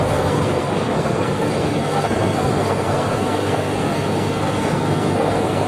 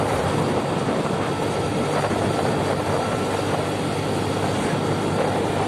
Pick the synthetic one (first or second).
first